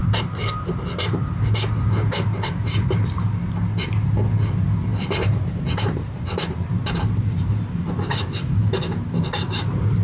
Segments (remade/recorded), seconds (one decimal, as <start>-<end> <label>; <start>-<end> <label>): 0.0-4.9 recorded; 4.9-7.3 remade; 7.3-10.0 recorded